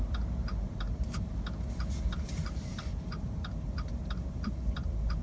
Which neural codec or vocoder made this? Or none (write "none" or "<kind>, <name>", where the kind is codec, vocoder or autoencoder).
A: vocoder, BigVGAN v2